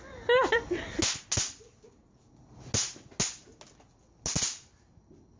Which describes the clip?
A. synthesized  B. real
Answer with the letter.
B